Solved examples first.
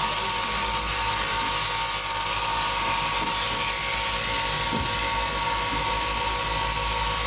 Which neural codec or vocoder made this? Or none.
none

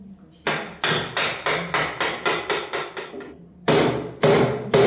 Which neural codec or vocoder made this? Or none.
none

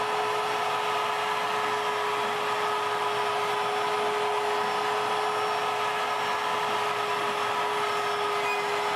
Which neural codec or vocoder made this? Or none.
none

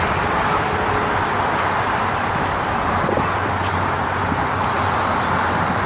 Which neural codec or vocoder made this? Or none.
vocoder, BigVGAN v2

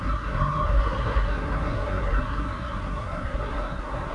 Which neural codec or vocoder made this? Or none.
codec, SNAC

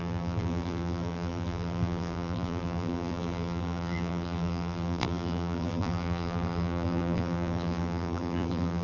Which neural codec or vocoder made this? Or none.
vocoder, BigVGAN v2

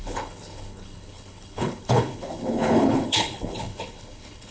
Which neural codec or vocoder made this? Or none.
codec, HILCodec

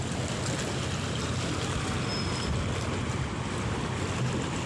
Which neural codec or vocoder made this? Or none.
none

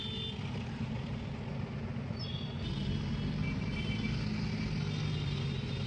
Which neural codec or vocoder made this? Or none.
none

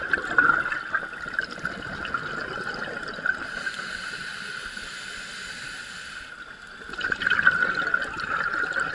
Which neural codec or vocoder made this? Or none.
none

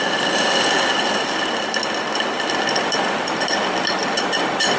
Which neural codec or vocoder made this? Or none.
none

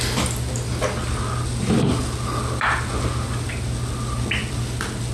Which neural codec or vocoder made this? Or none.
none